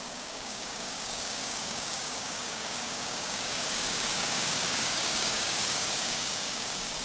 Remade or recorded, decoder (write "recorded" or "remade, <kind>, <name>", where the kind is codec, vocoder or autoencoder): remade, codec, DAC